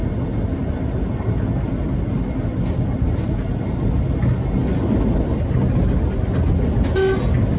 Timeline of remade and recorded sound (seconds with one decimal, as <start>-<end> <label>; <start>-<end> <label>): 0.0-3.3 remade; 3.3-7.6 recorded